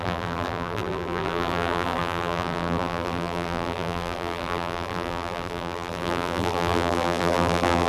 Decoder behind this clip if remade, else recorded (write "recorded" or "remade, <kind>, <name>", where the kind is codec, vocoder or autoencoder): remade, vocoder, BigVGAN v2